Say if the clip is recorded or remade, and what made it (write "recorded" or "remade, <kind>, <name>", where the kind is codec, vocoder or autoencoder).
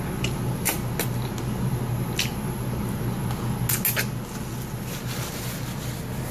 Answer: recorded